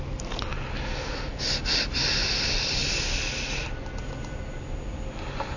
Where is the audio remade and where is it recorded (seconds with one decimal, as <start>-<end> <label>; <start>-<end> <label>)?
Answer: 0.0-5.6 recorded